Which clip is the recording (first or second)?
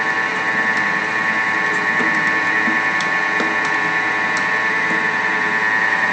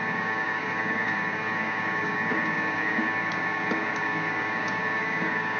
first